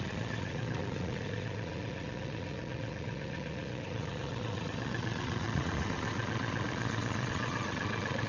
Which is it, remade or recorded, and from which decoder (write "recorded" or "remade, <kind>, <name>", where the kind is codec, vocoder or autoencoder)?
remade, vocoder, Vocos